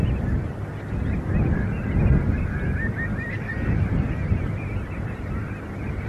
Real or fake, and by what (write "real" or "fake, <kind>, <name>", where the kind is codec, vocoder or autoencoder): real